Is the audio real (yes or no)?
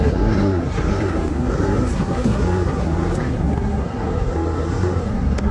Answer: no